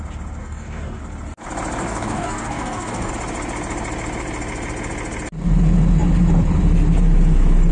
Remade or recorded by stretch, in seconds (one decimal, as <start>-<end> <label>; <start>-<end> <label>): 0.0-0.4 recorded; 0.4-1.0 remade; 1.0-1.8 recorded; 1.8-3.1 remade; 3.1-7.7 recorded